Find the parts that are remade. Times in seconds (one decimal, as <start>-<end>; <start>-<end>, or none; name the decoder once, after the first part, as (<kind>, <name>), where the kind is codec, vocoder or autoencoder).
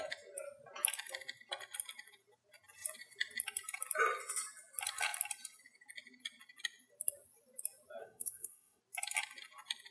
8.0-8.8 (codec, SNAC)